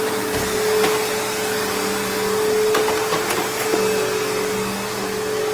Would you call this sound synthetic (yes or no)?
no